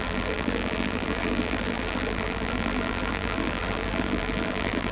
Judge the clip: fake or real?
fake